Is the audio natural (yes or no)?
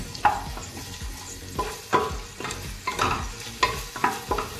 yes